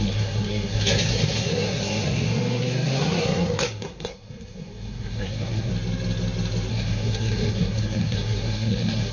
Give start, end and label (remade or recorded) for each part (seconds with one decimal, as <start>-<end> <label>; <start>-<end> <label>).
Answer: 0.0-5.7 remade; 5.7-6.7 recorded; 6.7-9.1 remade